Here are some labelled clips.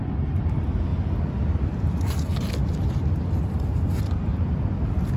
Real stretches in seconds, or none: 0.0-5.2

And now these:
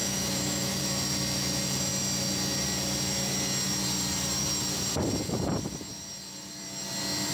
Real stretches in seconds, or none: 0.8-7.3